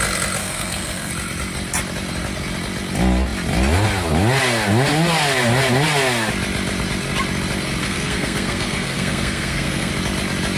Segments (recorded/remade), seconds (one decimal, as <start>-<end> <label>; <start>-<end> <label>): 0.0-0.4 recorded; 0.4-1.1 remade; 1.1-7.8 recorded; 7.8-9.9 remade; 9.9-10.6 recorded